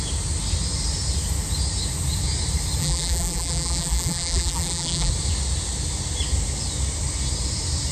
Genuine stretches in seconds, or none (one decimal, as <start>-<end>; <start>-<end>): 0.0-2.8; 5.1-7.9